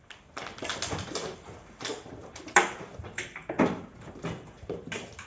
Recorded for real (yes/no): yes